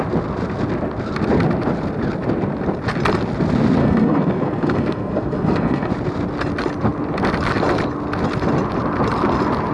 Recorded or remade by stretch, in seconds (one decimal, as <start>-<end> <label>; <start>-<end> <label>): 0.0-3.8 recorded; 3.8-5.9 remade; 5.9-9.7 recorded